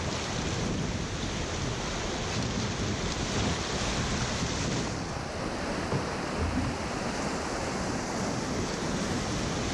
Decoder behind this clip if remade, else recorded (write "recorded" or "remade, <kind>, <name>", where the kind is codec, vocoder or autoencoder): recorded